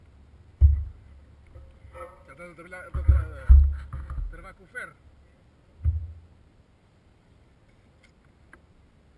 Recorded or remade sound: recorded